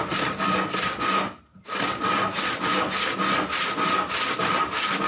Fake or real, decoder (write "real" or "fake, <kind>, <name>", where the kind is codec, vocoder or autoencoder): real